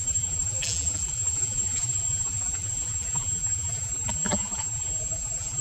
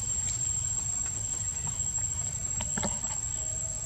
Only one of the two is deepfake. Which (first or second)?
first